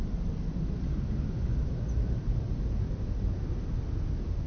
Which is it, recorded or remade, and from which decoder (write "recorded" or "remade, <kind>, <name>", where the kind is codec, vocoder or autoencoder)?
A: recorded